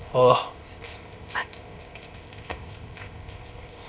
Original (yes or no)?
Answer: no